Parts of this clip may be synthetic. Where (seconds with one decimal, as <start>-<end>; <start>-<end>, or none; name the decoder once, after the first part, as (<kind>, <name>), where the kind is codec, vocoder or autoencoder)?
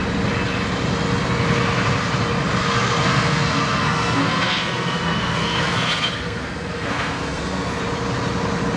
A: 2.6-7.8 (codec, SNAC)